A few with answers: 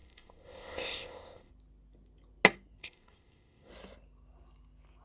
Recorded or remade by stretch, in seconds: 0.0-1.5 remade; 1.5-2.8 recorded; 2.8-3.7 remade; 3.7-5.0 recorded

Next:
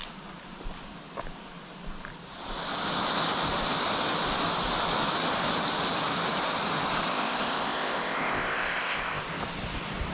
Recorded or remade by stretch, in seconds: 0.0-7.1 recorded; 7.1-9.2 remade; 9.2-10.1 recorded

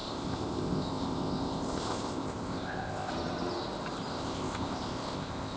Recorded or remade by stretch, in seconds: 0.0-3.1 remade; 3.1-4.1 recorded; 4.1-5.6 remade

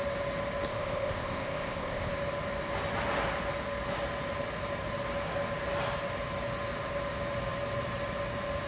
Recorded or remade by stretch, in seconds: 0.0-0.7 recorded; 0.7-2.1 remade; 2.1-8.7 recorded